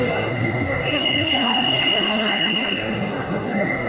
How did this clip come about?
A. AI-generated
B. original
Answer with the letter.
A